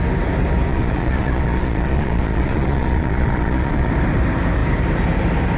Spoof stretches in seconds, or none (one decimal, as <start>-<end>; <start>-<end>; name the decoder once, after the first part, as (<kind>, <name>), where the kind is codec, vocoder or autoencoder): 0.7-3.9 (vocoder, Vocos)